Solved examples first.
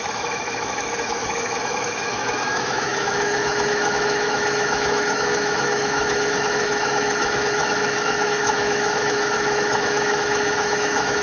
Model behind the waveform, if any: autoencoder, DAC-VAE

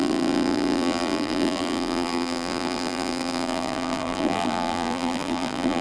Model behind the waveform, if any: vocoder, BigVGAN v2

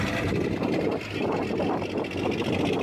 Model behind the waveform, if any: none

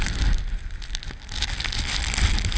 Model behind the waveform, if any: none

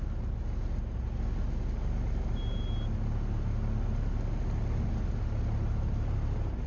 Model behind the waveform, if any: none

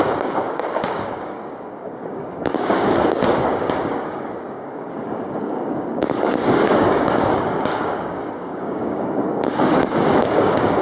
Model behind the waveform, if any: codec, DAC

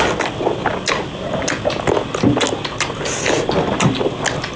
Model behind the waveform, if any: none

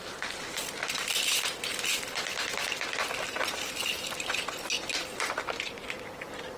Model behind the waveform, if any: vocoder, BigVGAN v2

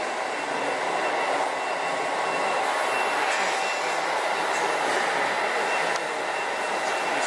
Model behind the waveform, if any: none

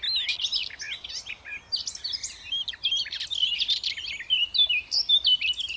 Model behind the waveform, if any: none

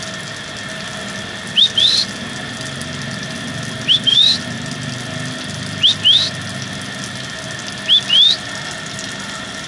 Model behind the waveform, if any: none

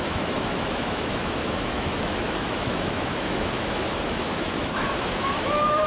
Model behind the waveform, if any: autoencoder, DAC-VAE